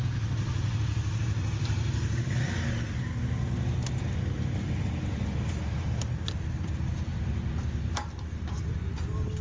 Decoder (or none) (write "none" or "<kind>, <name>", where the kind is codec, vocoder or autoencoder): none